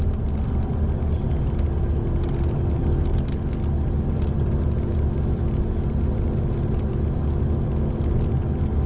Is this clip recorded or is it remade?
recorded